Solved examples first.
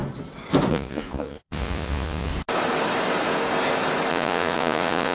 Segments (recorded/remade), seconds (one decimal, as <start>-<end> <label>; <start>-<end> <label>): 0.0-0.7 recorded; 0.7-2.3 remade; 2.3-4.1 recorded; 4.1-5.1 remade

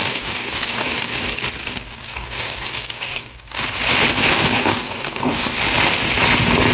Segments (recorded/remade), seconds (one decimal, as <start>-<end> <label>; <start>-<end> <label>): 0.0-1.2 remade; 1.2-1.6 recorded; 1.6-3.6 remade; 3.6-4.2 recorded; 4.2-5.6 remade; 5.6-6.7 recorded

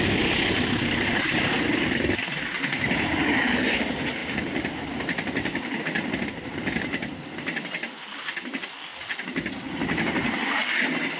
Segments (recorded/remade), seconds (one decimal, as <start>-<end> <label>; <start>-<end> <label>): 0.0-11.2 recorded

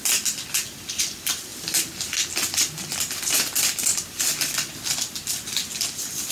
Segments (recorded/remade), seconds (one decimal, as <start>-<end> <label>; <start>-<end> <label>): 0.0-6.3 recorded

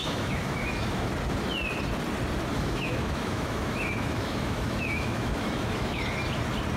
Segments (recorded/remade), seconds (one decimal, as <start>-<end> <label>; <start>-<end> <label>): 0.0-1.1 remade; 1.1-2.5 recorded; 2.5-6.0 remade; 6.0-6.8 recorded

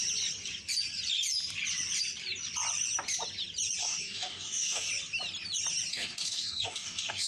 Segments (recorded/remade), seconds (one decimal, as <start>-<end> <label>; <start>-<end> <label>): 0.0-3.8 recorded; 3.8-4.9 remade; 4.9-5.9 recorded; 5.9-7.3 remade